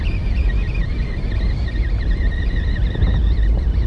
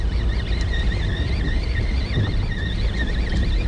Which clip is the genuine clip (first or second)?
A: second